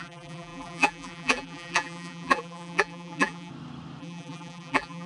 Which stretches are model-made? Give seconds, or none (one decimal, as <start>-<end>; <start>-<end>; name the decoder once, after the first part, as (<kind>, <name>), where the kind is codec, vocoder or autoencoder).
0.0-3.5 (vocoder, BigVGAN v2); 4.0-5.1